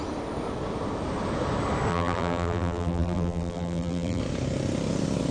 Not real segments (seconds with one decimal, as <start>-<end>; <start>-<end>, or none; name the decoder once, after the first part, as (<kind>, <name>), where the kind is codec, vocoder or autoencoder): 1.9-4.2 (vocoder, BigVGAN v2)